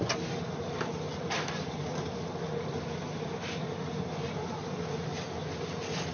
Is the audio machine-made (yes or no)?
no